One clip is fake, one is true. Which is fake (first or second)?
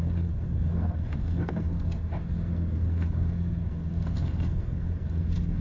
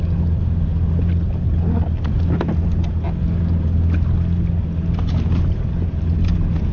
first